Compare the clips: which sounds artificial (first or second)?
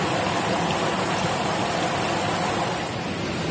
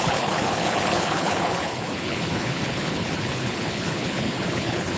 second